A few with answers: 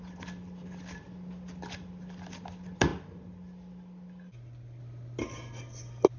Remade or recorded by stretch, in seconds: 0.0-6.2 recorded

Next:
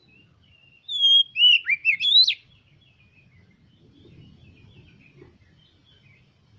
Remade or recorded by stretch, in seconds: 0.0-6.6 recorded

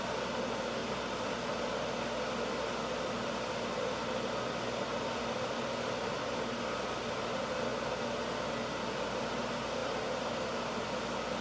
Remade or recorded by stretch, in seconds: 0.0-9.8 recorded; 9.8-10.9 remade; 10.9-11.4 recorded